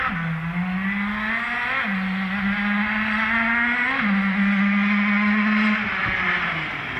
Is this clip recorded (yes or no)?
yes